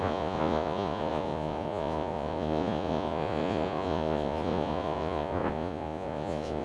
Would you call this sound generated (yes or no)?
yes